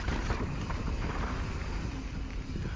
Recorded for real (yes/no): yes